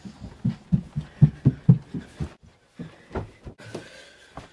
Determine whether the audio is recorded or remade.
recorded